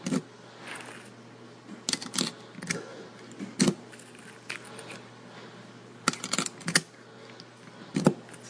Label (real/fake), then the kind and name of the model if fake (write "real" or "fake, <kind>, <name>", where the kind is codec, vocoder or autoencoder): real